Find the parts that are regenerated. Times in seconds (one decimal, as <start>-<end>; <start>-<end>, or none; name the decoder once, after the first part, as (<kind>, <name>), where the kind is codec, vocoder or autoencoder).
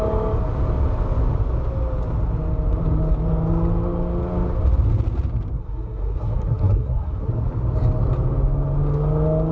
5.6-7.3 (codec, SNAC)